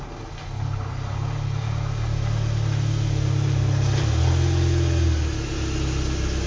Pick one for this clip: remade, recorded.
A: recorded